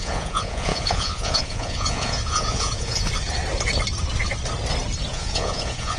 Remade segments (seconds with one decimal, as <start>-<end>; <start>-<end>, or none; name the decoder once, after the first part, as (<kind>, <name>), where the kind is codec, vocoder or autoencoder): 0.0-3.1 (vocoder, Vocos); 5.1-6.0